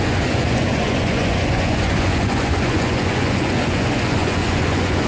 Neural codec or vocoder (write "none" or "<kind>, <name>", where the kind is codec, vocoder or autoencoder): vocoder, Vocos